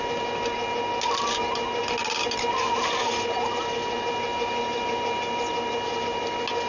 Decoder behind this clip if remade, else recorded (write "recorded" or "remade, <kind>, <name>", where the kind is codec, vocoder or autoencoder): recorded